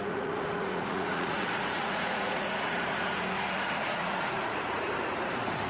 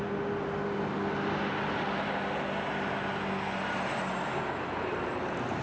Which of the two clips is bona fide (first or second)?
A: second